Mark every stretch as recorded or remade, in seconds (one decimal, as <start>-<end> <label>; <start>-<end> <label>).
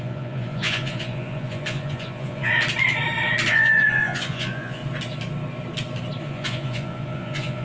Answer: 0.0-2.5 remade; 2.5-3.5 recorded; 3.5-4.8 remade; 4.8-6.2 recorded; 6.2-7.6 remade